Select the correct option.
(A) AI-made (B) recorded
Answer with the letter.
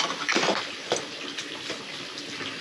B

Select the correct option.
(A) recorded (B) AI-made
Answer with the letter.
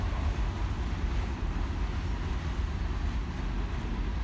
A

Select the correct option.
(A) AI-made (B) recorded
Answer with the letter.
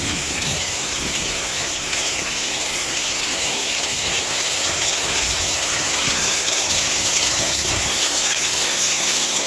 A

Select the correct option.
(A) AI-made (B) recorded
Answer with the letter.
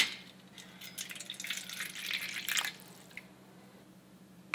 B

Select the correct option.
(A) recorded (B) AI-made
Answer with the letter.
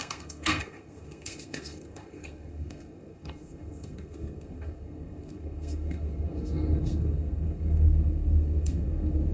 B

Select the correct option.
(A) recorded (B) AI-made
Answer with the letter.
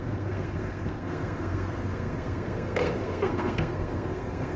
B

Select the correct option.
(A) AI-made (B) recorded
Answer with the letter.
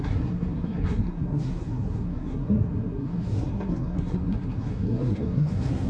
A